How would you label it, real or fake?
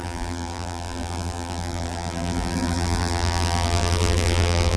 fake